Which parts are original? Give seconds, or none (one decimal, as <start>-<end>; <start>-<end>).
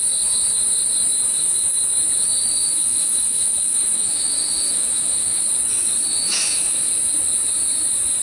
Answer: 0.0-1.3; 1.8-2.5; 5.4-6.1; 6.9-8.2